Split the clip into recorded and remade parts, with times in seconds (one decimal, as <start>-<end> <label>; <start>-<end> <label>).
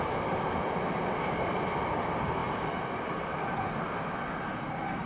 0.0-5.1 recorded